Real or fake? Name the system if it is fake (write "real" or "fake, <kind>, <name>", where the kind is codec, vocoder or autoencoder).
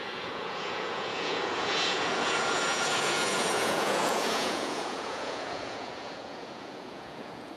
fake, vocoder, Vocos